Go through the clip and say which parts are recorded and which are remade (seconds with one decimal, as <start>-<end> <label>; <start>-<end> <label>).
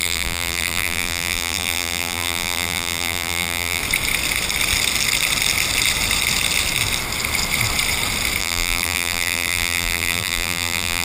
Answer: 0.0-3.8 remade; 3.8-8.4 recorded; 8.4-11.0 remade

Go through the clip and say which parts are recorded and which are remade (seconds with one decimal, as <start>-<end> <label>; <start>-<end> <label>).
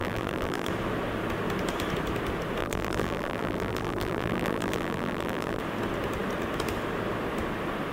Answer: 0.0-0.7 remade; 0.7-2.6 recorded; 2.6-5.6 remade; 5.6-7.9 recorded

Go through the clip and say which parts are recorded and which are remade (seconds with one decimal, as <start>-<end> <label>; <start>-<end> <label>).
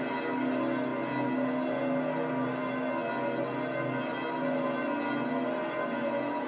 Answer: 0.0-6.5 recorded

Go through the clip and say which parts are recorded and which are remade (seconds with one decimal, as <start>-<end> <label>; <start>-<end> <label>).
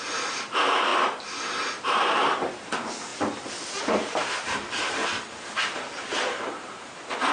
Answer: 0.0-0.9 remade; 0.9-1.4 recorded; 1.4-3.1 remade; 3.1-3.8 recorded; 3.8-5.0 remade; 5.0-5.6 recorded; 5.6-7.3 remade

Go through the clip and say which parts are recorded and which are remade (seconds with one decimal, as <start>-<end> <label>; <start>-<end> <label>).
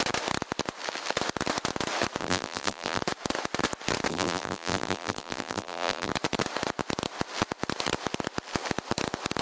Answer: 0.0-2.2 recorded; 2.2-3.0 remade; 3.0-4.1 recorded; 4.1-6.1 remade; 6.1-9.4 recorded